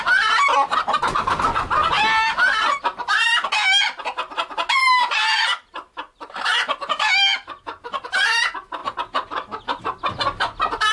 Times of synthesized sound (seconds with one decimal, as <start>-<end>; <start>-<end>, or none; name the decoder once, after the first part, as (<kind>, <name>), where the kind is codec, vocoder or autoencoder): none